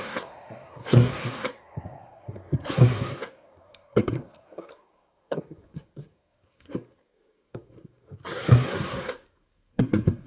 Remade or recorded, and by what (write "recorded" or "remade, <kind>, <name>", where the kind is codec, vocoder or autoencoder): remade, codec, SNAC